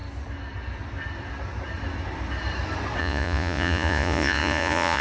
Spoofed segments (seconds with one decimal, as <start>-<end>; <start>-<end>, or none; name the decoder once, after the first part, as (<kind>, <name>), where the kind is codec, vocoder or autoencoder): 3.0-5.0 (vocoder, Vocos)